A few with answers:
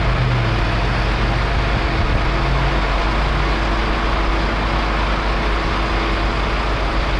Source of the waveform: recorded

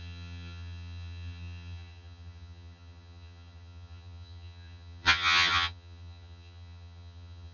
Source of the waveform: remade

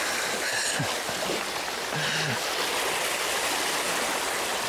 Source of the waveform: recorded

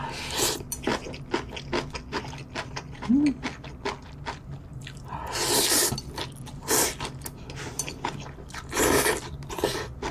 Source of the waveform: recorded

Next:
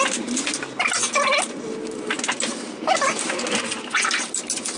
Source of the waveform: recorded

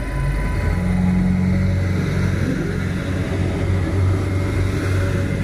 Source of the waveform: recorded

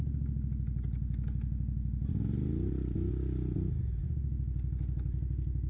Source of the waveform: recorded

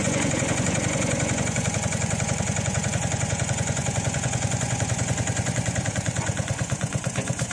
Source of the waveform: remade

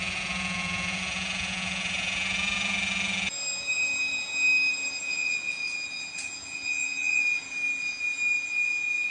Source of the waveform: remade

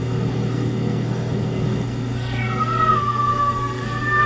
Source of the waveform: remade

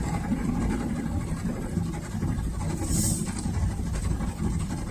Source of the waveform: recorded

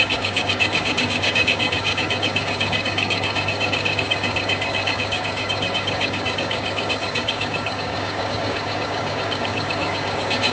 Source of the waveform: remade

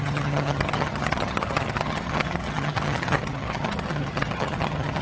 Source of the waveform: remade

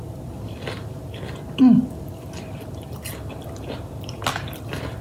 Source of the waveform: recorded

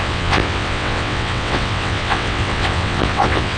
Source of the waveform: remade